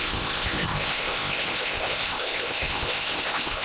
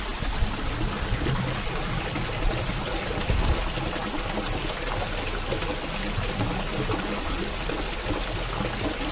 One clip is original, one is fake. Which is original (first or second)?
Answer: second